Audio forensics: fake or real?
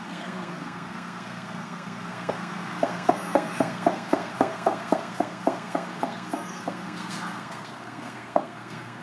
fake